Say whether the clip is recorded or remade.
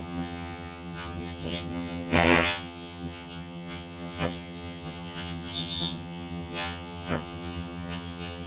remade